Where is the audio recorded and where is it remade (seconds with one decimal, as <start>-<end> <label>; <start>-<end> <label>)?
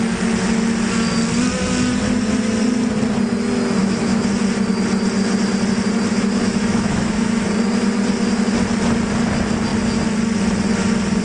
0.0-3.8 recorded; 3.8-4.3 remade; 4.3-6.1 recorded; 6.1-7.5 remade; 7.5-11.2 recorded